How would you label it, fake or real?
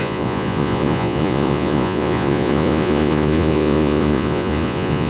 fake